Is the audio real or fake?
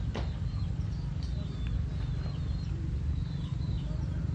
real